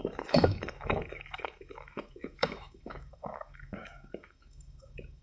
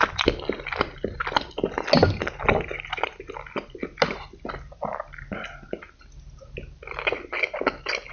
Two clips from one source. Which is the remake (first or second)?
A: first